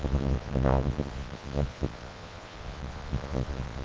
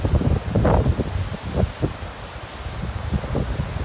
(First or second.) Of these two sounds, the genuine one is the second